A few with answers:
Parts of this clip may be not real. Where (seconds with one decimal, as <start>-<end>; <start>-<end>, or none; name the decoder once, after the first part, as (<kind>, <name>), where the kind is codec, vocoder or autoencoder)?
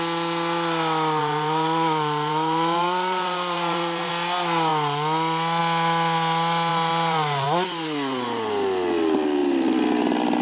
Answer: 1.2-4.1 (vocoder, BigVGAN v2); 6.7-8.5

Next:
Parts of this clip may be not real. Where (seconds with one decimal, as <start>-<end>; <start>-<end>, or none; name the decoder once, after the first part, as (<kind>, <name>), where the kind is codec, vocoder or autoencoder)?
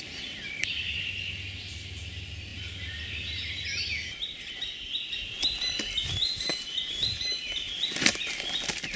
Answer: none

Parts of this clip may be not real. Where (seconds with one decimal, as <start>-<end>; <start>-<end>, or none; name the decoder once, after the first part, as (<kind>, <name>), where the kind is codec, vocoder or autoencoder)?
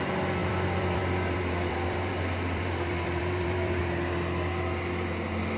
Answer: 0.4-3.8 (vocoder, BigVGAN v2)